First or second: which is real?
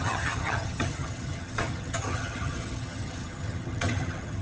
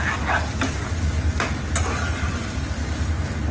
second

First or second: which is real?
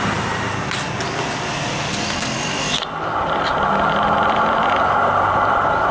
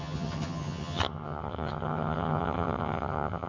first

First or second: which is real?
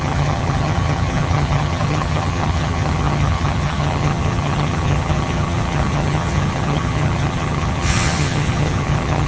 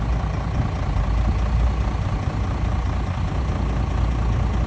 second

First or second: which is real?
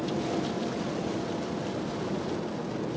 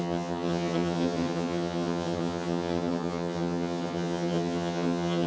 first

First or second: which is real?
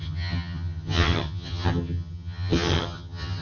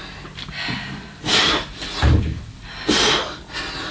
second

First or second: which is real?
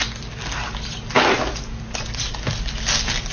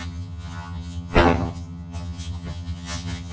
first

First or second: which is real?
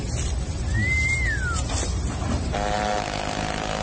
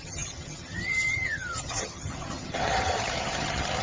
first